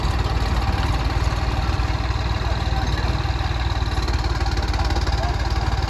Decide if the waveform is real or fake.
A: real